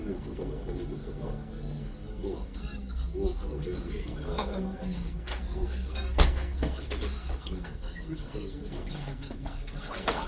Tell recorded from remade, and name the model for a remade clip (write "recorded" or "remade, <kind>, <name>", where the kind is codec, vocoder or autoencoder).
remade, codec, SNAC